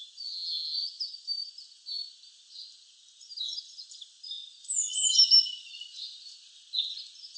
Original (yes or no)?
yes